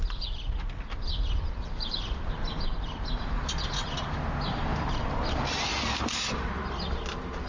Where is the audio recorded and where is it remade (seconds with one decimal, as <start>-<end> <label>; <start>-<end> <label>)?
0.0-7.5 recorded